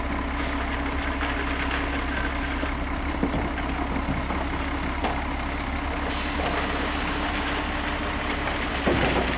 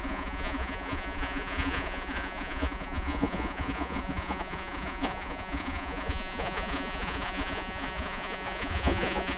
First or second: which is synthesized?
second